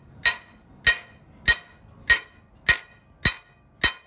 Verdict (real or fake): real